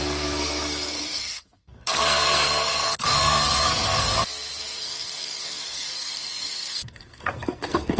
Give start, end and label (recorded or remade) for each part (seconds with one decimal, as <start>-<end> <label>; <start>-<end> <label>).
0.0-4.1 remade; 4.1-4.6 recorded; 4.6-8.0 remade

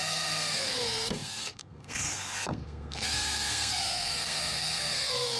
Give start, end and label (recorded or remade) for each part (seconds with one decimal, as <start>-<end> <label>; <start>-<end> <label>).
0.0-5.4 remade

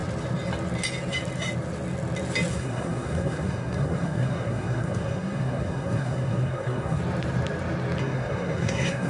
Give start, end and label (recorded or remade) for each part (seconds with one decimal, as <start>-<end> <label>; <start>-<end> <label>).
0.0-2.5 recorded; 2.5-7.0 remade; 7.0-8.0 recorded; 8.0-9.1 remade

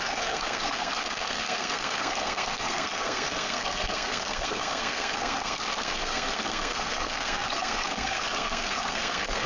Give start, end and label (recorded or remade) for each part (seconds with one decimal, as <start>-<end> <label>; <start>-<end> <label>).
0.0-9.5 remade

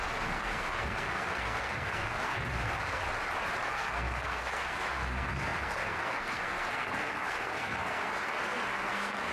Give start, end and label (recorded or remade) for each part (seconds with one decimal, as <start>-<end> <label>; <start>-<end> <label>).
0.0-3.0 remade; 3.0-3.7 recorded; 3.7-9.3 remade